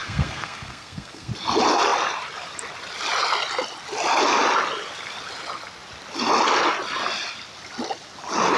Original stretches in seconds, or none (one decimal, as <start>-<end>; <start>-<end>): 1.3-8.6